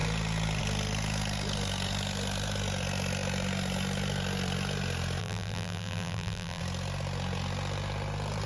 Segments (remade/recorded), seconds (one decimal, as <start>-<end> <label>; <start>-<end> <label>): 0.0-5.2 recorded; 5.2-6.6 remade; 6.6-8.5 recorded